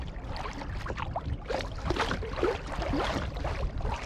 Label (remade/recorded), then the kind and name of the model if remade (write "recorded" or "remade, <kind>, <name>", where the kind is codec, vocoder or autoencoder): recorded